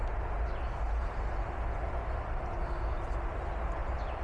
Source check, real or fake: real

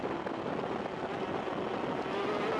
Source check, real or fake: real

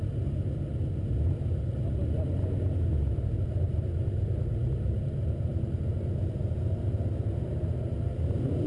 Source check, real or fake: real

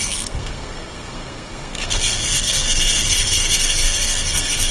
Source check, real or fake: fake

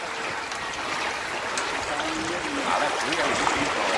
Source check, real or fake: real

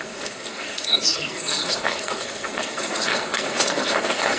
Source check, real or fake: fake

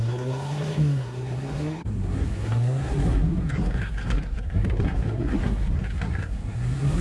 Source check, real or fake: fake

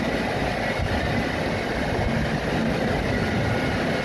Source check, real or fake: real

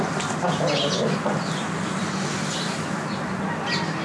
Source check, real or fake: real